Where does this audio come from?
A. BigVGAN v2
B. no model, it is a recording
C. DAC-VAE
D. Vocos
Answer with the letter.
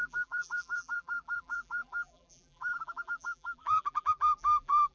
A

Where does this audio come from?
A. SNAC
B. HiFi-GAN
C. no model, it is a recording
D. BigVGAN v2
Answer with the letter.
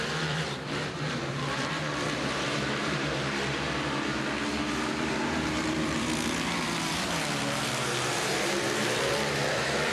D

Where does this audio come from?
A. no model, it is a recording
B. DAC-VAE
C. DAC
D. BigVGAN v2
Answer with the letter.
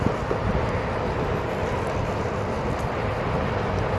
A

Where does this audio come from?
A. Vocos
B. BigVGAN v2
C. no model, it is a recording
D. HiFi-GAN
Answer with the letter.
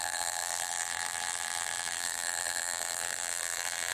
B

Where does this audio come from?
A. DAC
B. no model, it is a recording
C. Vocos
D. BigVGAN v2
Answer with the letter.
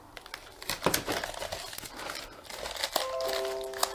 B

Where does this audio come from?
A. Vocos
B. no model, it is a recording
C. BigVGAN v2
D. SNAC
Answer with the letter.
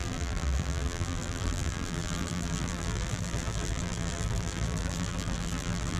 C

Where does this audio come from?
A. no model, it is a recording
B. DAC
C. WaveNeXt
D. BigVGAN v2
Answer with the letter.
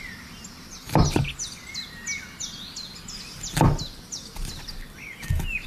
A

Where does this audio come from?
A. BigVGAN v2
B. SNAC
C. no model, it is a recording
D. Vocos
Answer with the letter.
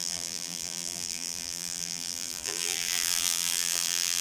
A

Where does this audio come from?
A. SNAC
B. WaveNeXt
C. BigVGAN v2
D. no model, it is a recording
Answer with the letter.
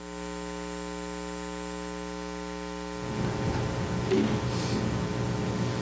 D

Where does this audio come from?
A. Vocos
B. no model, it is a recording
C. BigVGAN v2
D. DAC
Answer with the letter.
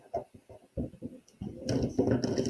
B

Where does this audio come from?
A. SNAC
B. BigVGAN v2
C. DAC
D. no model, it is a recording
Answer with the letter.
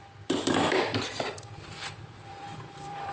B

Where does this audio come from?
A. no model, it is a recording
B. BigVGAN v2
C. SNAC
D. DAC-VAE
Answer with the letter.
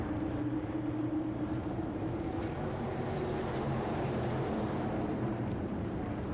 B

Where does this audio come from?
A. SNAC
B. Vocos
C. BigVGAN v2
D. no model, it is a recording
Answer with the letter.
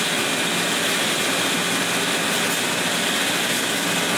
D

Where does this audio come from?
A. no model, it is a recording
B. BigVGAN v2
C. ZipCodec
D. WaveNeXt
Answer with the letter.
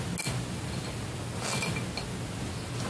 A